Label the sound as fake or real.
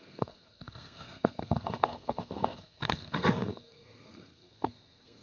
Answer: fake